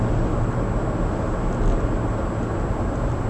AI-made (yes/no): no